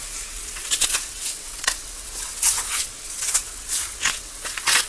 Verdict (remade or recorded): remade